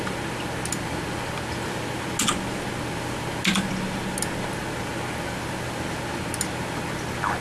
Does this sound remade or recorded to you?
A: recorded